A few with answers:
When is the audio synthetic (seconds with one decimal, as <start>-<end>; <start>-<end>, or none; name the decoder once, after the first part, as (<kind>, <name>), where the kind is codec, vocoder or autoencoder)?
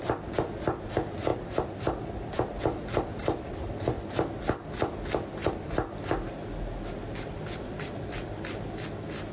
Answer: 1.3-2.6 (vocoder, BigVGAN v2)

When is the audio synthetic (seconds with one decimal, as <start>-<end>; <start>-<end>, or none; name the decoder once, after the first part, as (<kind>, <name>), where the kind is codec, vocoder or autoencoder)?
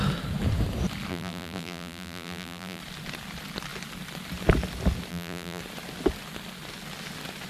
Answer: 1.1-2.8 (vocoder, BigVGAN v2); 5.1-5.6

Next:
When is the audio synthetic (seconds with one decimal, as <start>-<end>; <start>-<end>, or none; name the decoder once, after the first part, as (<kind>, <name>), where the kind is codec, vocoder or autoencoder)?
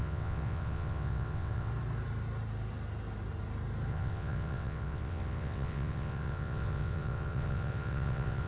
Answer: 0.0-1.7 (vocoder, WaveNeXt); 3.9-8.5